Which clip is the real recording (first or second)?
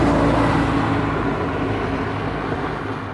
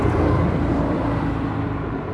first